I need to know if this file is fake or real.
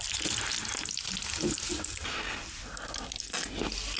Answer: real